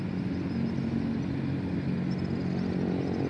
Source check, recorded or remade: recorded